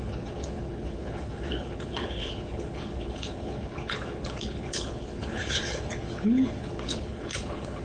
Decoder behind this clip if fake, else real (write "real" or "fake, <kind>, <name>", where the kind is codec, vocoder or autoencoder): fake, codec, HILCodec